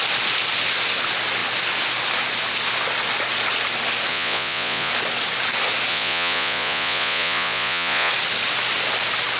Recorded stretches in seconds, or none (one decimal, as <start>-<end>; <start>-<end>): 0.0-4.1; 4.9-5.9; 8.1-9.4